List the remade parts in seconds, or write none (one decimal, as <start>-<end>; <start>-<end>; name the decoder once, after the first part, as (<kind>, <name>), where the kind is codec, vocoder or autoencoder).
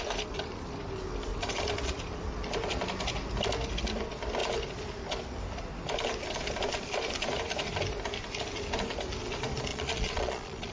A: 9.7-10.7 (vocoder, Vocos)